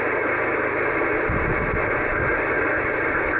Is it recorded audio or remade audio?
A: remade